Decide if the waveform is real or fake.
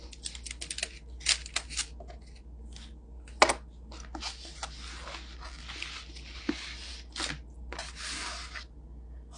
real